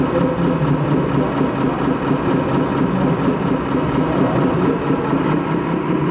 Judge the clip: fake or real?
real